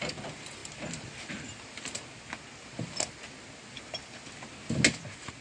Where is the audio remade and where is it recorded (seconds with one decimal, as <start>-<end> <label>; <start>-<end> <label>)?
0.0-5.4 recorded